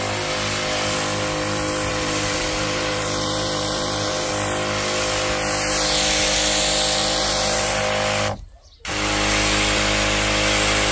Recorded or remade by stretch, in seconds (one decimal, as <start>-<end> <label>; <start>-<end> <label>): 0.0-1.9 recorded; 1.9-4.3 remade; 4.3-7.0 recorded; 7.0-7.8 remade; 7.8-10.9 recorded